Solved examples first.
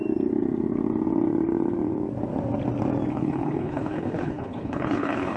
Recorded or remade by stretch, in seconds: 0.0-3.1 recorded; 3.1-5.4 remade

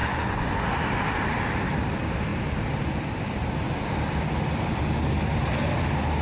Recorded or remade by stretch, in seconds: 0.0-0.6 remade; 0.6-6.2 recorded

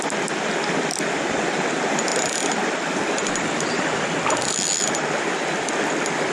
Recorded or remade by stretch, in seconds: 0.0-6.3 recorded

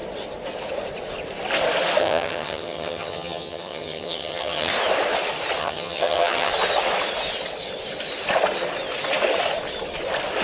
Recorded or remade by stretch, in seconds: 0.0-2.0 recorded; 2.0-4.7 remade; 4.7-5.6 recorded; 5.6-6.5 remade; 6.5-10.4 recorded

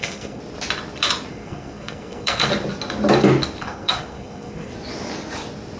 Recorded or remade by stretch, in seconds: 0.0-0.4 remade; 0.4-1.3 recorded; 1.3-2.5 remade; 2.5-3.6 recorded; 3.6-4.7 remade; 4.7-5.8 recorded

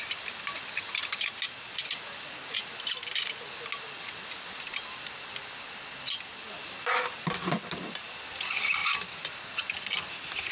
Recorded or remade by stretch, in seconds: 0.0-10.5 recorded

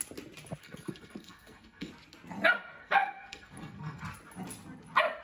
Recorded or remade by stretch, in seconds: 0.0-0.6 recorded; 0.6-1.9 remade; 1.9-2.8 recorded; 2.8-4.0 remade; 4.0-5.2 recorded

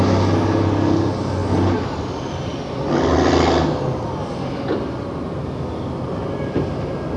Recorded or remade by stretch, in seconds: 0.0-1.4 recorded; 1.4-3.1 remade; 3.1-7.2 recorded